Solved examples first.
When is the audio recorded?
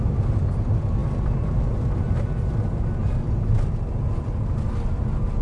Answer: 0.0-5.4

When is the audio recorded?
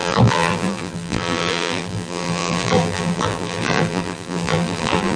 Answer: none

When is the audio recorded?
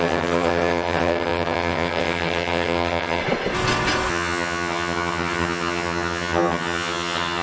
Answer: 3.2-4.1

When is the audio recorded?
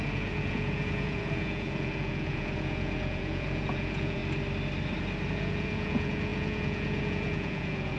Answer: 4.2-5.3